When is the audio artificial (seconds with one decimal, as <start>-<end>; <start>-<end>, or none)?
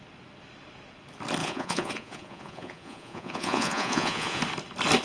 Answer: 1.4-4.4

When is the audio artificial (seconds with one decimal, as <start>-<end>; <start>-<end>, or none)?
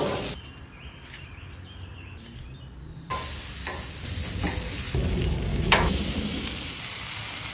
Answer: 5.5-6.0